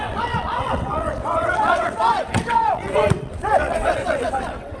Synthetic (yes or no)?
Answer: yes